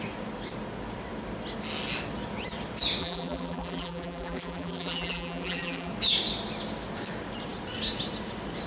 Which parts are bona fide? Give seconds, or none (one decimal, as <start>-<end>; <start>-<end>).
0.0-3.0; 5.9-8.7